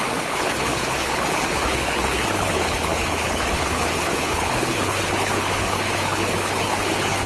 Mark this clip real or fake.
fake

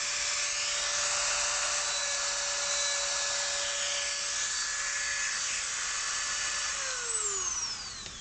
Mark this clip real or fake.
real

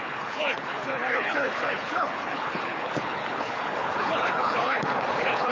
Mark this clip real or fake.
fake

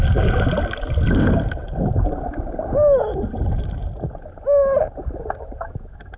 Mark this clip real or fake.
real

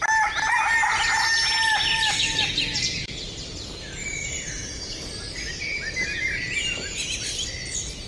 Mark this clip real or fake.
real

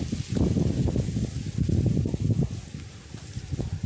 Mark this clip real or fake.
real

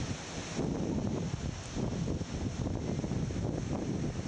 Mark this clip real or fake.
real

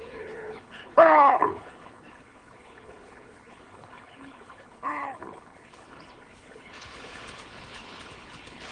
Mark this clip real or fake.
fake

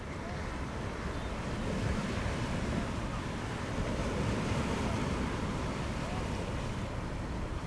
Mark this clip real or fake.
real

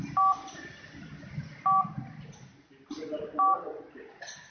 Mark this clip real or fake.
real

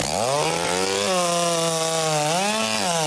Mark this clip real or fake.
real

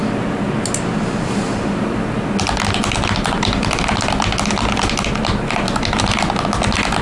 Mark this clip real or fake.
real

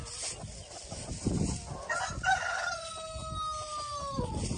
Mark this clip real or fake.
real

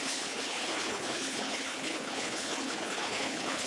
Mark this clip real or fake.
fake